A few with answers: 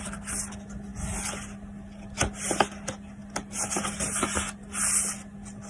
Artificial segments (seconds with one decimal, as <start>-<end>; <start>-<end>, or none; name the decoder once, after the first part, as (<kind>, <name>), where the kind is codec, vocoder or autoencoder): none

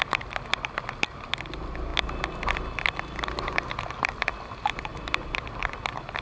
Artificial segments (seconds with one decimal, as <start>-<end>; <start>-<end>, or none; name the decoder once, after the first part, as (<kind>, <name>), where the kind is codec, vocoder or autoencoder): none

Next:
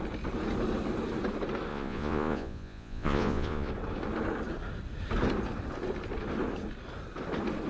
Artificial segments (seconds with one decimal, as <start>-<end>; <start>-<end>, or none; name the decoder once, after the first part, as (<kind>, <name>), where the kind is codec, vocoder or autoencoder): 1.7-3.7 (vocoder, Vocos)